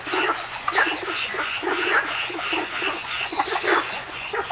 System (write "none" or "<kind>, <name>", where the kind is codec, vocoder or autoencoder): vocoder, Vocos